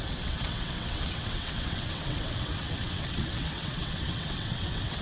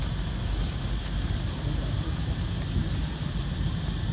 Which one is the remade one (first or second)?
first